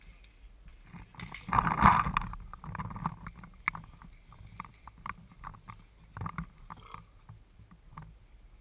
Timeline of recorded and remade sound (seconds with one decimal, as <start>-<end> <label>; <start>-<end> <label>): 0.0-8.6 recorded